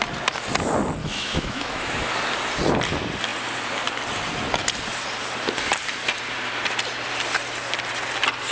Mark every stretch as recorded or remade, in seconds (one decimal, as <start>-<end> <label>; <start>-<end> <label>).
0.0-1.0 recorded; 1.0-2.1 remade; 2.1-8.5 recorded